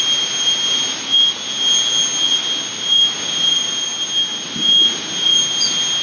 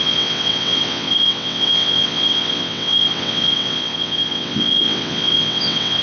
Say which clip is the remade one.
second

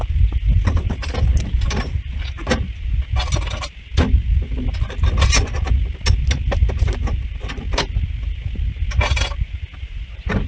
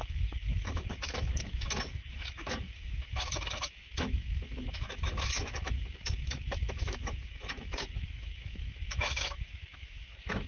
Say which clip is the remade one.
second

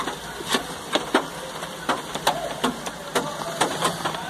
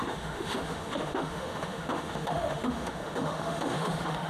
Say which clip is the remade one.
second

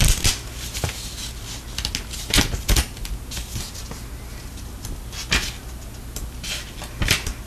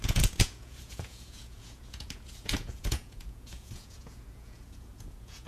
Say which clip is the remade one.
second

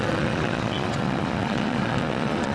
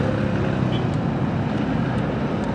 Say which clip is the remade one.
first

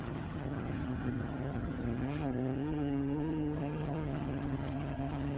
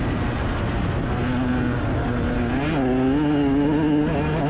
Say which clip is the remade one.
first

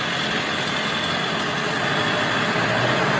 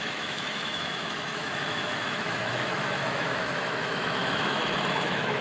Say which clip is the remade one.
second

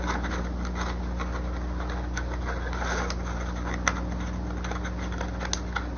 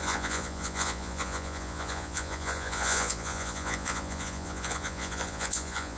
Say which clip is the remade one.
second